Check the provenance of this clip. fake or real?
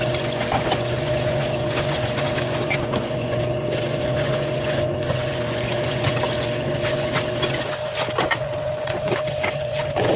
fake